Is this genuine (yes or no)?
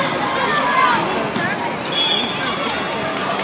yes